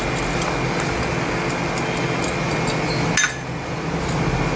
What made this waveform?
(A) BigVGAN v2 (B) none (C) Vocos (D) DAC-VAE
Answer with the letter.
B